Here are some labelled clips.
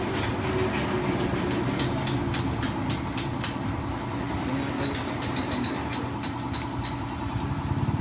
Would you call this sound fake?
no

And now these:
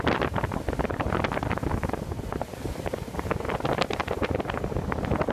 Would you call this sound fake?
no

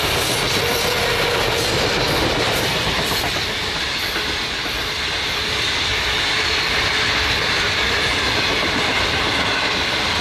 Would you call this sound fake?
no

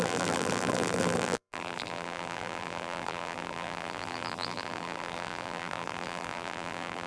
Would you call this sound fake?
yes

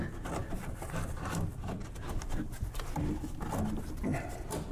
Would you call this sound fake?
no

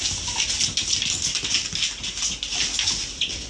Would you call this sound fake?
no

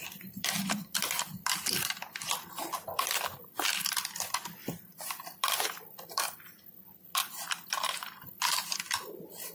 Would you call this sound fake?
yes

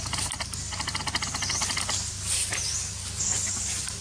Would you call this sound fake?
no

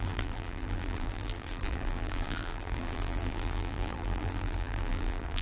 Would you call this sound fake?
yes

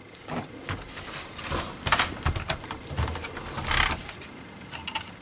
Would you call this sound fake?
no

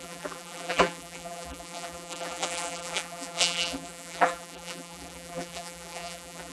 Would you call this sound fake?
yes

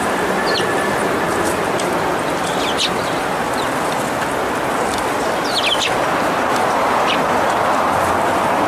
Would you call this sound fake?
no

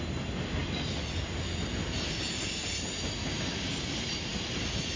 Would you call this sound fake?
no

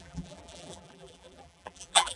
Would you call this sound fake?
yes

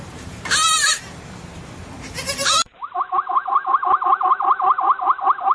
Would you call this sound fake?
yes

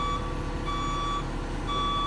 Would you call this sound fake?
no